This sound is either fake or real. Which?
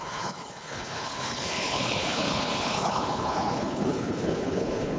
fake